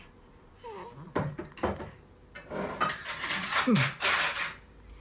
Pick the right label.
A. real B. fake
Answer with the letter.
A